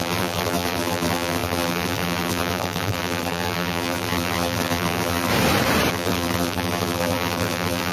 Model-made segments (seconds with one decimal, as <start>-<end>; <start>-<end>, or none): 0.0-5.3; 5.9-7.9

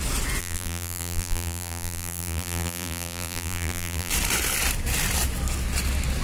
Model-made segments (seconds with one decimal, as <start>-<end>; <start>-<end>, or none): 0.4-4.1

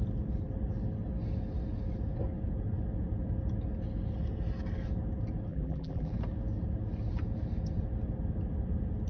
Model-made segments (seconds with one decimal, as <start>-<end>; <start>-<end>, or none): 5.5-6.1

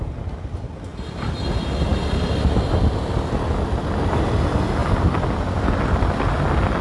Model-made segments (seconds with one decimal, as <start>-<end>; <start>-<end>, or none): 0.9-1.5; 4.8-6.8